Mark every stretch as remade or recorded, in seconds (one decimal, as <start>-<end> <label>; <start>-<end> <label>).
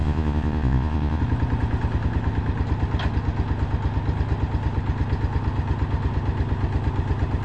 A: 0.0-1.2 remade; 1.2-7.4 recorded